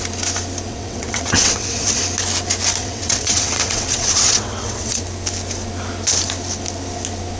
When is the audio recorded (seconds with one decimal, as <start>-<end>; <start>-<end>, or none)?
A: 0.0-0.7; 2.0-2.8; 5.0-7.4